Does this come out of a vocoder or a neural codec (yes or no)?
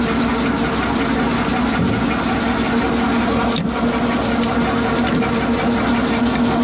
no